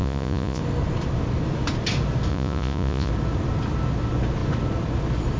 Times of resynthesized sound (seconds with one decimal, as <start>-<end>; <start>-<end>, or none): 0.0-0.6; 2.3-3.1